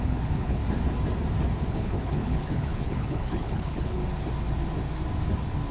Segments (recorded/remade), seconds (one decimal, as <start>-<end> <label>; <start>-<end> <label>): 0.0-0.6 remade; 0.6-1.7 recorded; 1.7-4.0 remade; 4.0-5.7 recorded